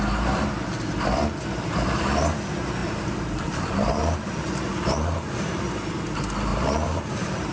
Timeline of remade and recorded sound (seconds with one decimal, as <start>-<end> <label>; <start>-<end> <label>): 0.0-2.8 recorded; 2.8-5.6 remade; 5.6-6.5 recorded; 6.5-7.5 remade